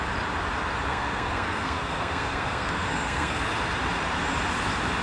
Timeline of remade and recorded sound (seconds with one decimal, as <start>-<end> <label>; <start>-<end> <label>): 0.0-0.9 recorded; 0.9-3.4 remade; 3.4-5.0 recorded